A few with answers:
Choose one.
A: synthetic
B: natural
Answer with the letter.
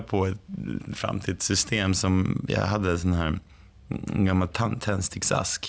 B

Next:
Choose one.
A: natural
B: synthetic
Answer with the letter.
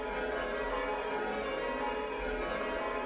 A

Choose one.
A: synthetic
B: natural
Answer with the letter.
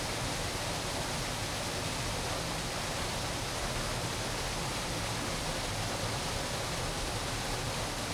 B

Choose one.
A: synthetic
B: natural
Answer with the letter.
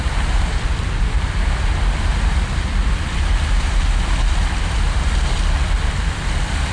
A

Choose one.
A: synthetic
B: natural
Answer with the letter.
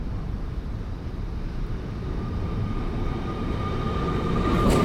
A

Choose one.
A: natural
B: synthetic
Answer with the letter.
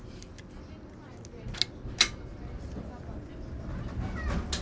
A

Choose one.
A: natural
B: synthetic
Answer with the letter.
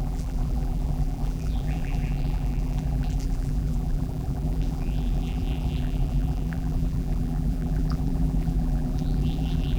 B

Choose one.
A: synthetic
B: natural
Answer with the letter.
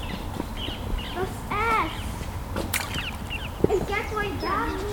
B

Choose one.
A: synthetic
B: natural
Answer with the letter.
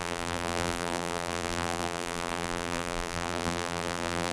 A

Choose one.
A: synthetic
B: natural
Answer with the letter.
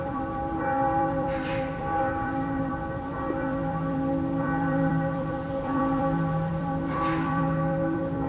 A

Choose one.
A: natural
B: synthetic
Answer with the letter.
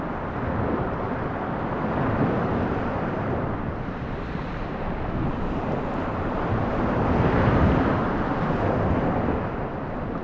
A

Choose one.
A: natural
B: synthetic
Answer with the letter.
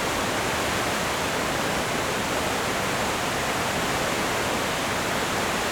A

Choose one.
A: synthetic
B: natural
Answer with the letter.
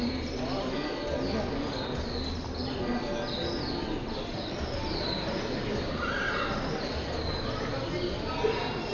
B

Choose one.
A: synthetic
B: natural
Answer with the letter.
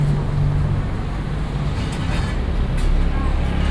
B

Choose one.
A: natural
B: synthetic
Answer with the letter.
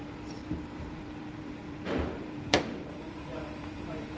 B